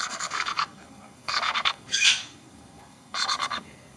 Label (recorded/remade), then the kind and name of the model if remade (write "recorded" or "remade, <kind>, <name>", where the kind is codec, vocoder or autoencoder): remade, codec, SNAC